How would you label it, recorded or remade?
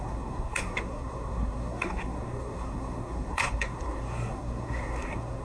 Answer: remade